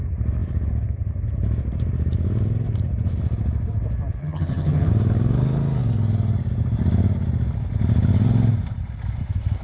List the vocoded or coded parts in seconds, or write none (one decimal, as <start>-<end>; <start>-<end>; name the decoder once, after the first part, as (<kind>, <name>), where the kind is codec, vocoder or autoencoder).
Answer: 4.2-4.9 (vocoder, HiFi-GAN)